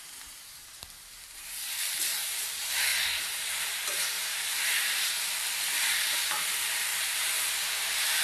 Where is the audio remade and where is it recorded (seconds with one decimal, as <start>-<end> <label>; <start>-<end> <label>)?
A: 0.0-2.9 remade; 2.9-3.5 recorded; 3.5-8.2 remade